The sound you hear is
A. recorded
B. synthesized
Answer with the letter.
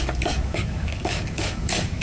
B